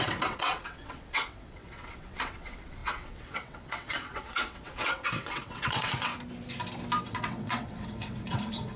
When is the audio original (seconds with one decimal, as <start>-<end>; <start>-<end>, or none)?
6.1-7.0